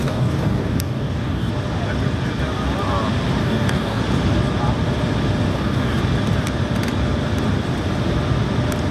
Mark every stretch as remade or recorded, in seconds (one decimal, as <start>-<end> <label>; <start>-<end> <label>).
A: 0.0-1.5 remade; 1.5-3.4 recorded; 3.4-4.0 remade; 4.0-5.5 recorded; 5.5-6.0 remade; 6.0-8.9 recorded